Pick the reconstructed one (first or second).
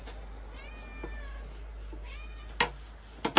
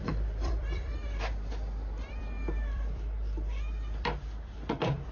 second